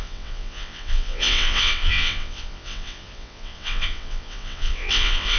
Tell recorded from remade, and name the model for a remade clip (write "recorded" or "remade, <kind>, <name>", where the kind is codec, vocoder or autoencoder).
remade, vocoder, WaveNeXt